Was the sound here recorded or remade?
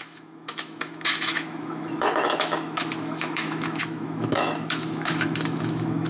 remade